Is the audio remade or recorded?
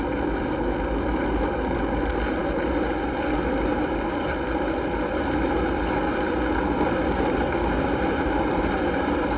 recorded